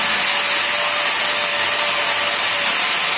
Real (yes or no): yes